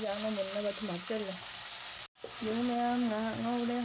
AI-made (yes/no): no